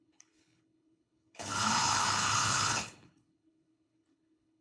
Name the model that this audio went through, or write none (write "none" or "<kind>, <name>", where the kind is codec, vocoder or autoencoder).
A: codec, HILCodec